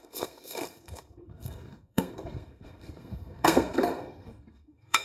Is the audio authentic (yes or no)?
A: no